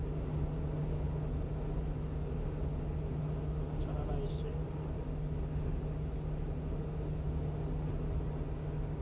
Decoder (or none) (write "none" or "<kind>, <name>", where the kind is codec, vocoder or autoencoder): none